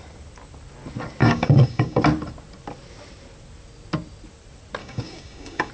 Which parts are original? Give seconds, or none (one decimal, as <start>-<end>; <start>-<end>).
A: 0.0-1.2; 2.0-4.8